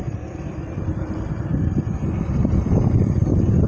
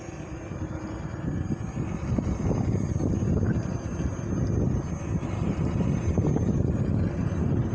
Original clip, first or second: second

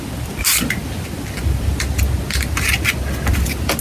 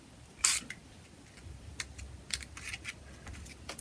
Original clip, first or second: first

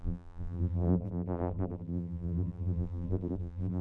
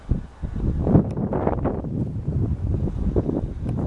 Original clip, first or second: second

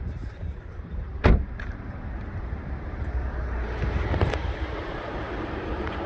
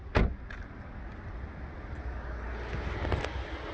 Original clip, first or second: second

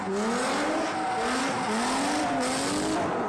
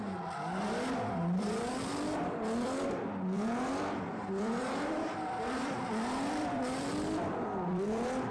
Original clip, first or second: first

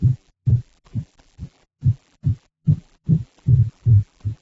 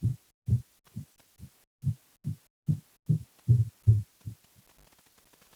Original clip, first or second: second